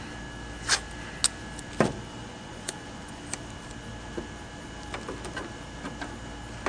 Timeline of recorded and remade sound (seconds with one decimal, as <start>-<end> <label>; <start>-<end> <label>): 0.0-2.2 recorded; 2.2-3.2 remade; 3.2-6.7 recorded